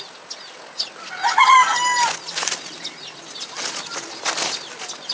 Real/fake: real